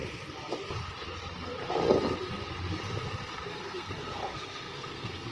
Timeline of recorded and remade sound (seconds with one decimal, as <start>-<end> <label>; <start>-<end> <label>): 0.0-3.5 recorded; 3.5-5.3 remade